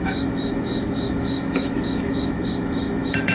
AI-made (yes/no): yes